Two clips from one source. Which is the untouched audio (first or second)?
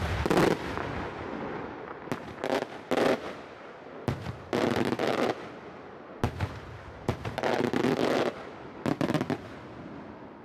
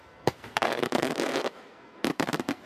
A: first